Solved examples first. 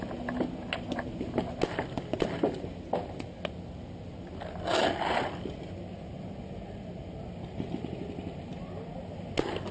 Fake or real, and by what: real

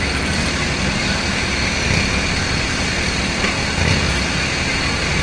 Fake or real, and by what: real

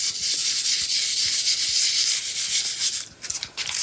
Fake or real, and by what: real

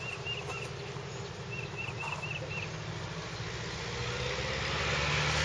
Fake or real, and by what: real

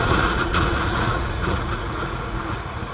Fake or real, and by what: fake, vocoder, Vocos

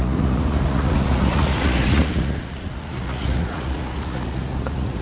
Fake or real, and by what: fake, vocoder, Vocos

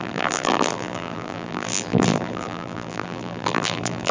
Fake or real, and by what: fake, vocoder, BigVGAN v2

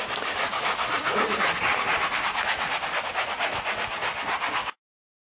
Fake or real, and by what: real